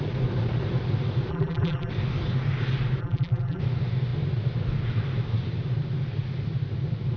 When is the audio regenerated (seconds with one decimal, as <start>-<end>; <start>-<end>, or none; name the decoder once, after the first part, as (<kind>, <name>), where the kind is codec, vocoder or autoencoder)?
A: 1.3-1.9 (vocoder, BigVGAN v2); 3.0-3.6